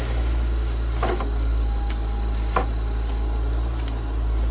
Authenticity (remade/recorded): recorded